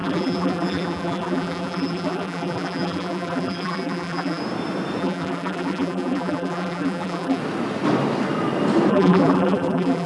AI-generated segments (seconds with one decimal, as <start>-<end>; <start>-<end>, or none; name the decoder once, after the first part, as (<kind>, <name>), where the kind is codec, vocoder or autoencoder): 0.0-4.4 (vocoder, BigVGAN v2); 5.0-7.4; 8.9-10.1